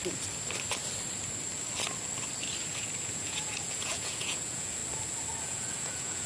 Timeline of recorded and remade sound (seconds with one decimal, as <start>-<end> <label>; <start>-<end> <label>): 0.0-2.7 recorded; 2.7-4.8 remade; 4.8-5.4 recorded; 5.4-6.3 remade